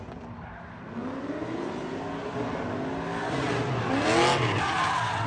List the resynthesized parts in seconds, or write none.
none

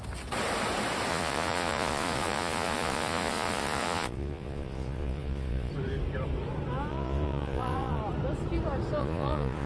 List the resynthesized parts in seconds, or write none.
1.1-5.7 (vocoder, Vocos); 6.9-8.0; 9.0-9.7

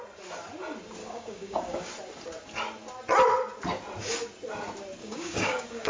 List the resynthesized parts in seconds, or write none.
1.0-1.9 (codec, DAC); 5.0-5.9

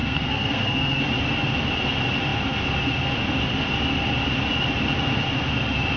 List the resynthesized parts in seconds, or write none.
0.0-1.0 (codec, SNAC)

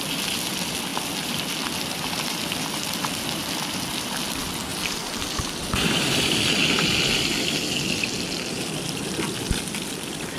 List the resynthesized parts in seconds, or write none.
4.7-6.4 (vocoder, BigVGAN v2)

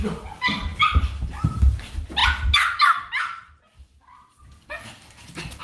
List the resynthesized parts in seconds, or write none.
0.0-2.2 (vocoder, BigVGAN v2); 3.8-5.6

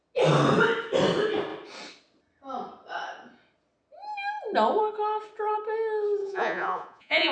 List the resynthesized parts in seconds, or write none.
6.2-7.3 (vocoder, Vocos)